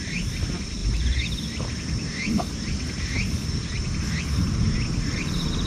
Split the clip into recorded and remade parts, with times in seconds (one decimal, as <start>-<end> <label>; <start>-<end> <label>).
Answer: 0.0-0.8 remade; 0.8-4.2 recorded; 4.2-5.7 remade